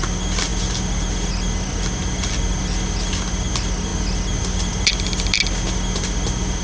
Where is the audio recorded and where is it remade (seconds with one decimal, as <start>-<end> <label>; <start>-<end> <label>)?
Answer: 0.0-6.6 recorded